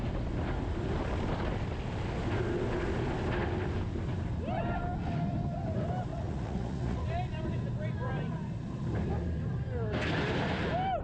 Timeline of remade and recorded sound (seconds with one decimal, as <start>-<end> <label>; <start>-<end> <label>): 0.0-6.1 recorded; 6.1-7.0 remade; 7.0-11.0 recorded